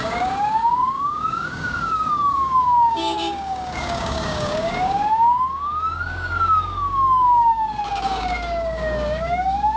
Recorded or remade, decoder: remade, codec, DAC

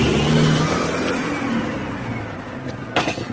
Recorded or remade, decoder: recorded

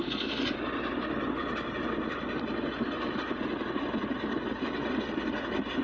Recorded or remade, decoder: remade, vocoder, BigVGAN v2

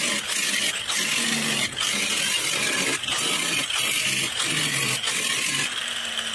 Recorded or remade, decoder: recorded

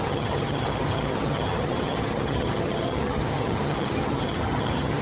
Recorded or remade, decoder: remade, vocoder, HiFi-GAN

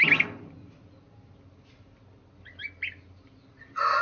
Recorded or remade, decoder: recorded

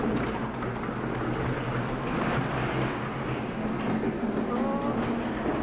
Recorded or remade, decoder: recorded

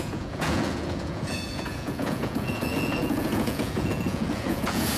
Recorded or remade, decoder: remade, vocoder, Vocos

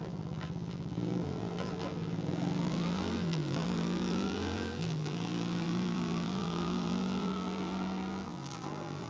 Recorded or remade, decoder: remade, vocoder, BigVGAN v2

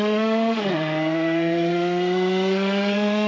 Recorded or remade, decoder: remade, codec, SNAC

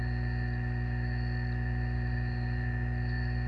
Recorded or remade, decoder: recorded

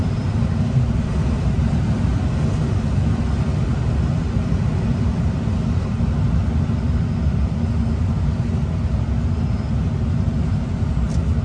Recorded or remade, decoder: recorded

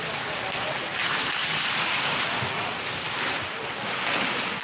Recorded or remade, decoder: remade, vocoder, BigVGAN v2